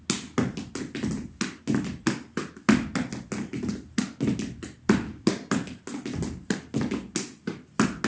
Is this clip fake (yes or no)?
no